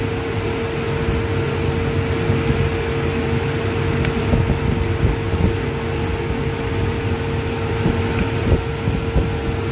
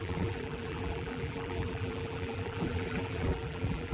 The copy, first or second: second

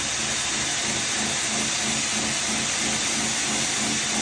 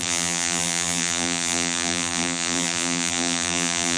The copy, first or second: second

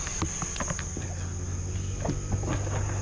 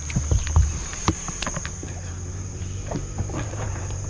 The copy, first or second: second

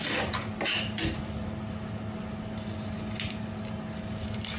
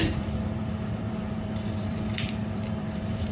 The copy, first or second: second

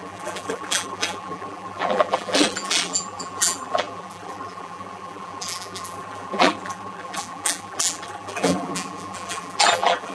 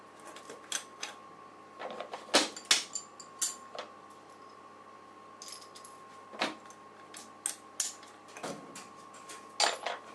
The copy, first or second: first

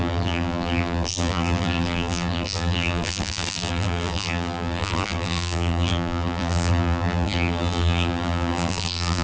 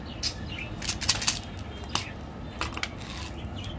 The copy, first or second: first